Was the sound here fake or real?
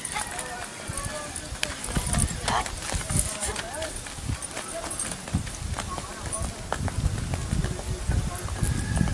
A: real